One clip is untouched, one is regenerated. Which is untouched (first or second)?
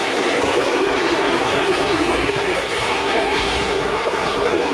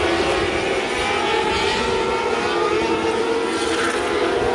second